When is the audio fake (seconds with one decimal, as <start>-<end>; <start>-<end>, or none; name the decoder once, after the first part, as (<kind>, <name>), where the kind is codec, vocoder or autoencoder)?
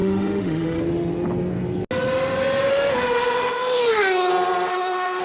0.0-0.8 (autoencoder, DAC-VAE); 2.7-4.3; 4.7-5.2